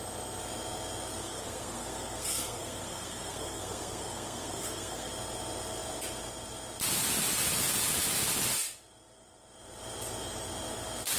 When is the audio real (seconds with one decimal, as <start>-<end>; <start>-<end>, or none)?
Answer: 0.0-1.2; 5.1-11.2